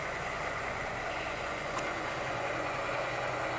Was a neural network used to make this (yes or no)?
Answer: yes